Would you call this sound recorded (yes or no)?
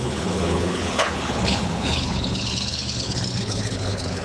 no